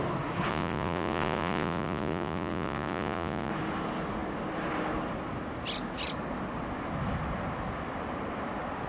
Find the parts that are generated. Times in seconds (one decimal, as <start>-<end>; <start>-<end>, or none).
0.5-3.5